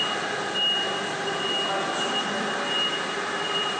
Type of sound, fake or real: real